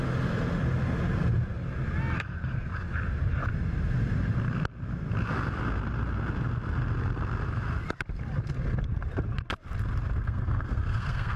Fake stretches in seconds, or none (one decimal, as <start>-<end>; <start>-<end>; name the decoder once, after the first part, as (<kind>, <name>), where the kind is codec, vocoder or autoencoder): 10.2-11.4 (codec, SNAC)

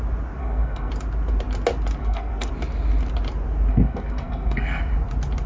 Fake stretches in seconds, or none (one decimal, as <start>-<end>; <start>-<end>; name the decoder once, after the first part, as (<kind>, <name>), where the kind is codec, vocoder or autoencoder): 0.4-0.9 (codec, SNAC); 2.0-2.5; 3.7-4.8

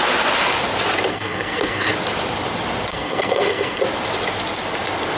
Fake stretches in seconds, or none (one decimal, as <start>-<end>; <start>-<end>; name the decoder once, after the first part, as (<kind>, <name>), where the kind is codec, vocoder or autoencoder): 1.1-1.9 (codec, SNAC); 2.9-3.8

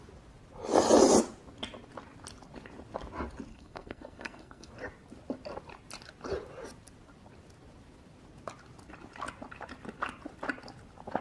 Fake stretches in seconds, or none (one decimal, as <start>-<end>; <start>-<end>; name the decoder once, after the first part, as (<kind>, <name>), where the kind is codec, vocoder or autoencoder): 3.5-4.7 (codec, SNAC)